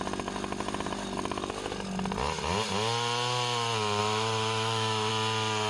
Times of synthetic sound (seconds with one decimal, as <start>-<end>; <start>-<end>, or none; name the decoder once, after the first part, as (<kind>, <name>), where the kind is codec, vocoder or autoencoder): 4.0-5.1 (autoencoder, DAC-VAE)